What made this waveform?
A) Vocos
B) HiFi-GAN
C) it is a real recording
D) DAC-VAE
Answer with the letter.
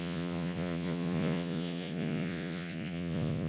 A